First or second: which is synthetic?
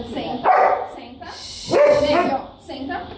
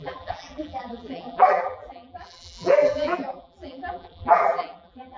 second